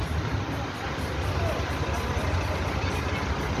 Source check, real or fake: real